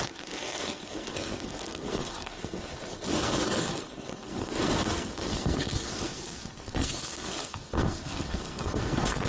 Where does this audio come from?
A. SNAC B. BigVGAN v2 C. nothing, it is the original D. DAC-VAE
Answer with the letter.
A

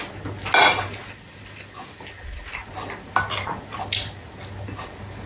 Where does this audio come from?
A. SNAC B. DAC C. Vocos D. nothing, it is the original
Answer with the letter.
D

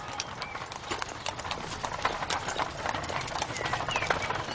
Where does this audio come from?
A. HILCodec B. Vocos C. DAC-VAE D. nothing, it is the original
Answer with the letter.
D